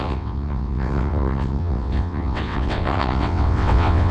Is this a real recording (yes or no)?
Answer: no